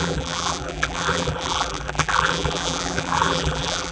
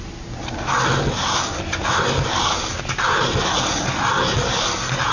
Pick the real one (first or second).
second